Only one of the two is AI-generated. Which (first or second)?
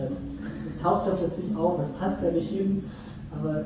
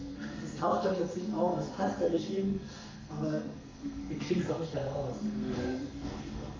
second